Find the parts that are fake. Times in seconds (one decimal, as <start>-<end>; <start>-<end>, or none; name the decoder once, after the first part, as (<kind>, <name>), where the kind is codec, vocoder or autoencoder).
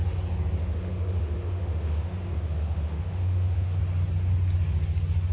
0.6-3.8 (autoencoder, DAC-VAE)